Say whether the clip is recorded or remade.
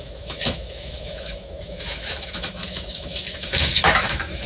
remade